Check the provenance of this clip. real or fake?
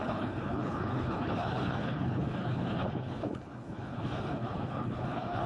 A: fake